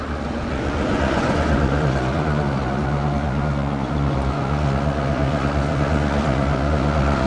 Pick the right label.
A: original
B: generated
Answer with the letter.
B